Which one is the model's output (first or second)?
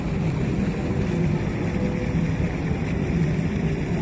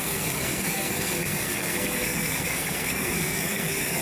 second